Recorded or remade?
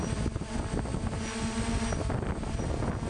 recorded